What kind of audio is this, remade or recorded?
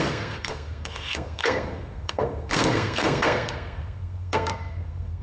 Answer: remade